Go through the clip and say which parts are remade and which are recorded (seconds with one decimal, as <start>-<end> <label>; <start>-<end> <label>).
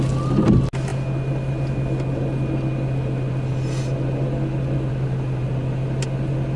0.0-6.6 recorded